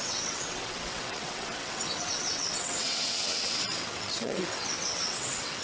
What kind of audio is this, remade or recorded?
remade